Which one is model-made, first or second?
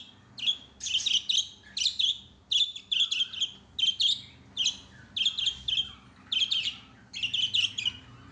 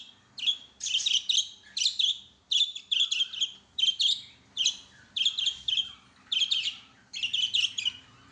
second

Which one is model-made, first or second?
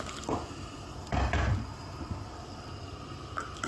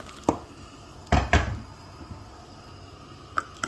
first